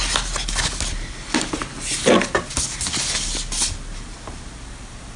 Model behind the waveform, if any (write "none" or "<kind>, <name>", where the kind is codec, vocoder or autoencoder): none